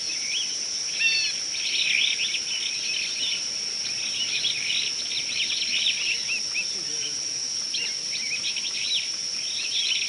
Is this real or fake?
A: real